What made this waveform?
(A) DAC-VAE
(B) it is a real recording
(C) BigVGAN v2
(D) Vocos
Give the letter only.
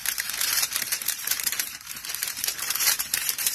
C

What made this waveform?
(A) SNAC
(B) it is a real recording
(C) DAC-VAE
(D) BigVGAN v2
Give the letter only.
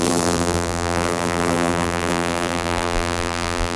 D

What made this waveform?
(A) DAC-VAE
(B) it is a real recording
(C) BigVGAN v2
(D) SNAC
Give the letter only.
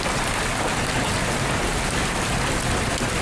B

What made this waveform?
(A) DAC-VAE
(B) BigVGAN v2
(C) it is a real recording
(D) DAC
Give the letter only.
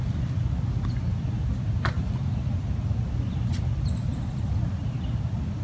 C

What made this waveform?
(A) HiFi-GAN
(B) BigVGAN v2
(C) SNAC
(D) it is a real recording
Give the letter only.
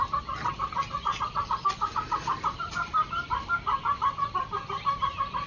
B